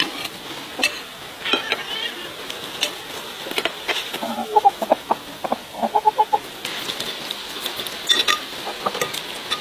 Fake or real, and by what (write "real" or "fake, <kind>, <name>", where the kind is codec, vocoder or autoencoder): real